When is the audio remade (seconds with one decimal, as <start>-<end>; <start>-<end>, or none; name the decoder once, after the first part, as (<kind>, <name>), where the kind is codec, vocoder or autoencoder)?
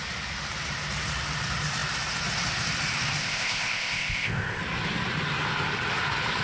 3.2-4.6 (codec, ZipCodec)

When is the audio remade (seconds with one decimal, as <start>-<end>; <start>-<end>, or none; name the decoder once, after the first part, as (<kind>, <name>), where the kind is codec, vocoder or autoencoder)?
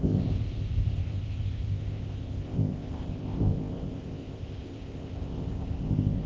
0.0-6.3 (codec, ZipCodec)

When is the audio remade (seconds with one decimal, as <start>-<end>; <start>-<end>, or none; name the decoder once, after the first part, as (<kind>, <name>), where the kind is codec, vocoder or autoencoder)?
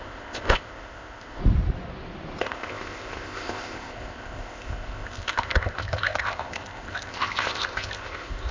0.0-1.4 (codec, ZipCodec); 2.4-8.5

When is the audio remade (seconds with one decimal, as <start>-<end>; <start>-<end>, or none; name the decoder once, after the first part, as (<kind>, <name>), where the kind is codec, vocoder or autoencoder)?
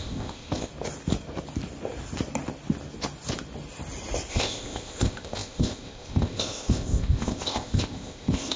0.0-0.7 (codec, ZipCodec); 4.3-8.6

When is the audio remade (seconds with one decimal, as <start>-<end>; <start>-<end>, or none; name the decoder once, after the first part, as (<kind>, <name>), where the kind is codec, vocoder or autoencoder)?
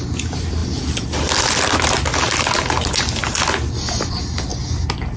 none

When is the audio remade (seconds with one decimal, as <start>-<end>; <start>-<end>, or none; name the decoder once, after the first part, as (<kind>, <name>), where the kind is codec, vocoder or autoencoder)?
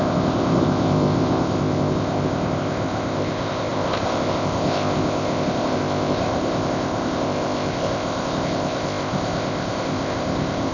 0.0-10.7 (codec, ZipCodec)